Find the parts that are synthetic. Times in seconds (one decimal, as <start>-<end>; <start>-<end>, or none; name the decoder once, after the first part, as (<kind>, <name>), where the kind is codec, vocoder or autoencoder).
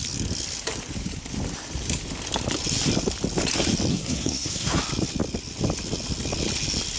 3.9-4.8 (codec, SNAC)